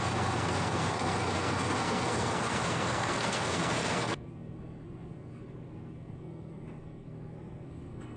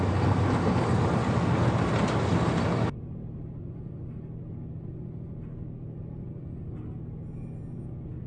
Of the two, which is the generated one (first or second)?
first